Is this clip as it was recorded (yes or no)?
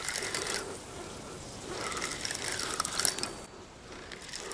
yes